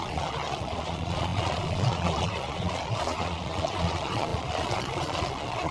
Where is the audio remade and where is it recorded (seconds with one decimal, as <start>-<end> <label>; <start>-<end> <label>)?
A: 0.0-5.7 remade